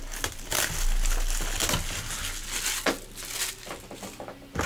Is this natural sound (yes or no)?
yes